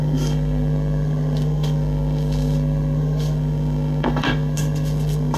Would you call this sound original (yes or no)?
no